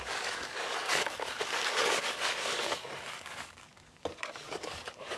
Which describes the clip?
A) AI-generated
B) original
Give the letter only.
A